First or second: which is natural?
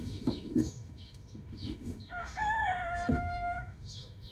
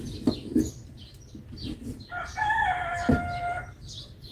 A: second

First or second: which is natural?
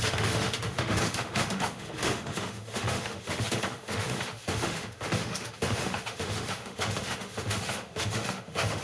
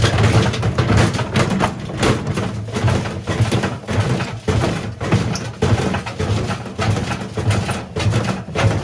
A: second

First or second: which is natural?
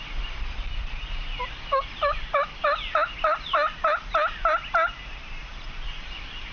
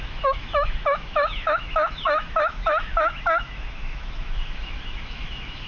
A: first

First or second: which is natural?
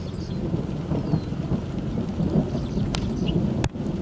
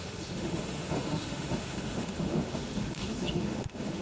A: first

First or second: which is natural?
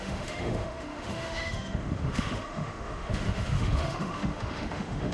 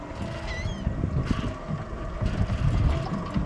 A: second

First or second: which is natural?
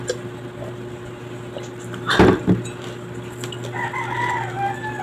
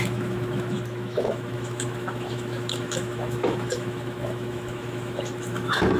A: first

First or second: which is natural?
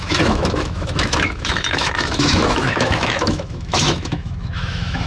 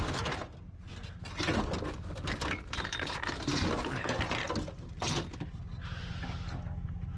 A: second